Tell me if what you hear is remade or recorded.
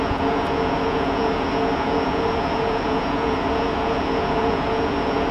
remade